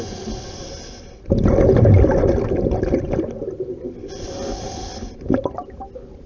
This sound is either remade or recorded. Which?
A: recorded